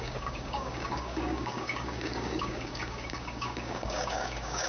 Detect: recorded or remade remade